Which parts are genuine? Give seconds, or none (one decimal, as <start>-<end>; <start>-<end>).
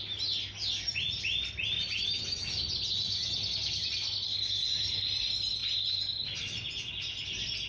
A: 0.0-7.7